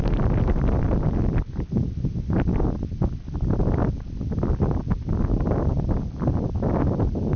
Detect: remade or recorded recorded